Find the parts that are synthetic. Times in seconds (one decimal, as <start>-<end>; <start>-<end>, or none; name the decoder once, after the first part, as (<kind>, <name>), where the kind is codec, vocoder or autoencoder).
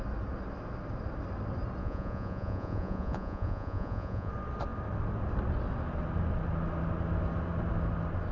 1.8-4.3 (vocoder, Vocos)